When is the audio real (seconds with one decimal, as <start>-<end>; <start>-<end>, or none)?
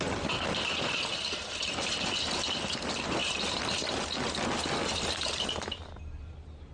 0.0-6.7